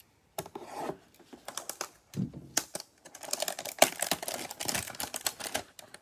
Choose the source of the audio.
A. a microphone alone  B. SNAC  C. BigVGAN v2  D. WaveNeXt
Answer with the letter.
A